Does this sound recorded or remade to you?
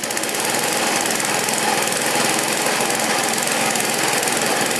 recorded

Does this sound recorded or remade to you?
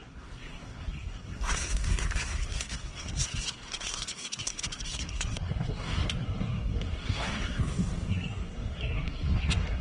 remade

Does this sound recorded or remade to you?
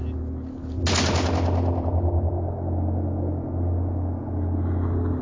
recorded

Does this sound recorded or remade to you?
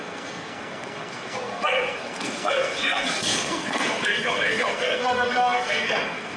remade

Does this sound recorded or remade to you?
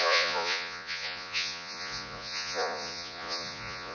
remade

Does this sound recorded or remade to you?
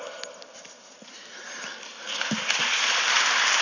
recorded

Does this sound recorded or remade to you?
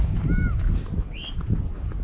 recorded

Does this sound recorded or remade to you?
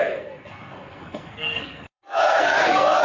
remade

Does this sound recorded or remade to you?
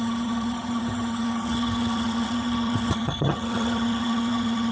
remade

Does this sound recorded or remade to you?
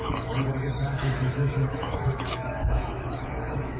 remade